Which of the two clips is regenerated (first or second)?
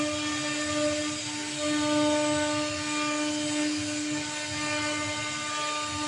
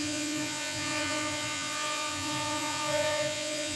second